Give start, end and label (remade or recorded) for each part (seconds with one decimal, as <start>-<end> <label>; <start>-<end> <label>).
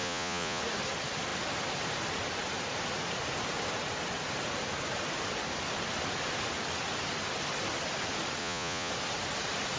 0.0-0.6 remade; 0.6-8.4 recorded; 8.4-8.9 remade; 8.9-9.8 recorded